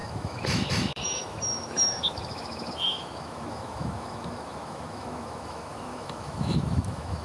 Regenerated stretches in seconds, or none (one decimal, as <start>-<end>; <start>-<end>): 0.0-7.2